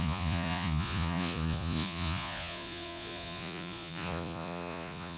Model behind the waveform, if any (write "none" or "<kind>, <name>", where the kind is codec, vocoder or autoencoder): vocoder, Vocos